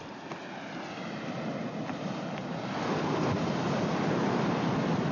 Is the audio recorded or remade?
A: recorded